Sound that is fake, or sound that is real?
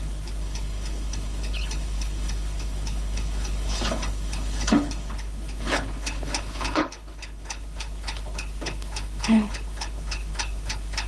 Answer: fake